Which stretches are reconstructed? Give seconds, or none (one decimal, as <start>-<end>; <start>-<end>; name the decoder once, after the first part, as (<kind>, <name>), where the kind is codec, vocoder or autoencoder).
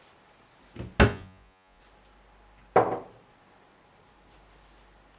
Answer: 1.1-1.8 (vocoder, Vocos)